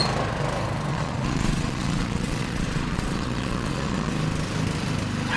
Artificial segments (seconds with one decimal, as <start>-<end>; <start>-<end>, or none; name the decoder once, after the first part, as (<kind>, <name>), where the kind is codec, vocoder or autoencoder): 0.9-4.1 (vocoder, Vocos)